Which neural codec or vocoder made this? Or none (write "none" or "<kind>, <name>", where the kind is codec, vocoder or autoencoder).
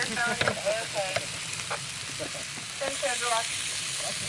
none